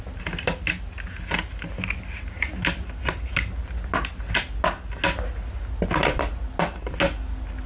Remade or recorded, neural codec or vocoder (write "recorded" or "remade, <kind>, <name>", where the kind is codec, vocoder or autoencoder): recorded